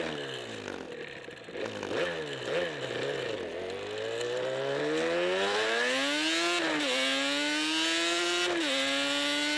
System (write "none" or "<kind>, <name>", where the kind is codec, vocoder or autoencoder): none